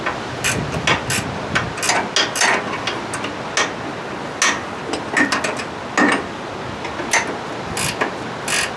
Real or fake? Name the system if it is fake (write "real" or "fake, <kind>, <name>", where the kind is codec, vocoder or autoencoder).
real